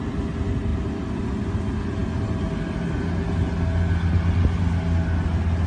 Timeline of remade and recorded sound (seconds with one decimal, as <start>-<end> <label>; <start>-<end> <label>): 0.0-5.7 recorded